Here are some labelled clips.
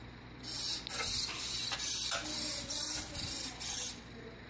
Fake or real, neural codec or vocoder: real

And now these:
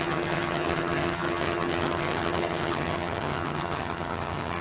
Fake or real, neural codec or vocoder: fake, vocoder, HiFi-GAN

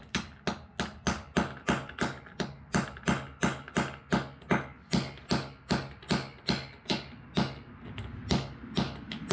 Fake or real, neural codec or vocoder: real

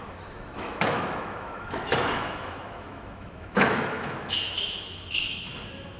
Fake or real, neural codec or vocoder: fake, autoencoder, DAC-VAE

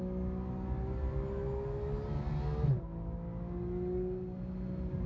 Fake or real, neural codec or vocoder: real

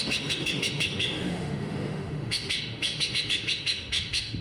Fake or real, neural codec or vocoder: fake, autoencoder, DAC-VAE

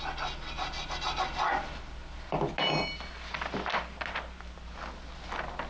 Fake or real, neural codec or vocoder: real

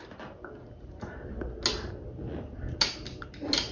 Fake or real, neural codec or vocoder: real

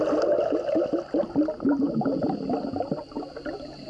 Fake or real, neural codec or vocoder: real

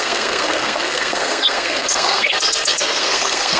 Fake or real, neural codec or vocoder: fake, codec, SNAC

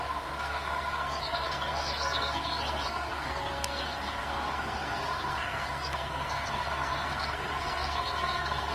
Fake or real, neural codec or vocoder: fake, codec, SNAC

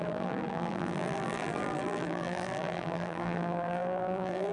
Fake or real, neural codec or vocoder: fake, vocoder, BigVGAN v2